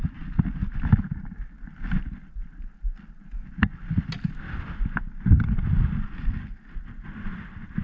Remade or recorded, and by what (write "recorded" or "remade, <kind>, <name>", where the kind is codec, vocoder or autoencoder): recorded